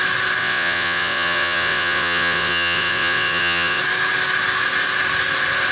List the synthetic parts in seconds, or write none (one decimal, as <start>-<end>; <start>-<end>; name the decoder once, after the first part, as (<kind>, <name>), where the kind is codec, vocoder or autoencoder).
0.4-3.8 (vocoder, WaveNeXt)